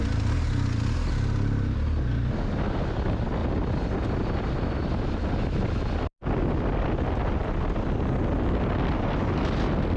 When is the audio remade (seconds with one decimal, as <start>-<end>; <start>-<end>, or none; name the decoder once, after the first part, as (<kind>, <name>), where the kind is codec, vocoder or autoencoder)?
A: none